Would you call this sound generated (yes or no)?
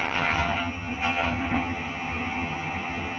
yes